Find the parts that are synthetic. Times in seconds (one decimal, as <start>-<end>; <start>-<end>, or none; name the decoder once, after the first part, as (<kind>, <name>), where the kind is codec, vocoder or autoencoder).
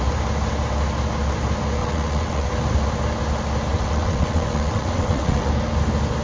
1.8-2.5 (vocoder, WaveNeXt); 3.7-5.5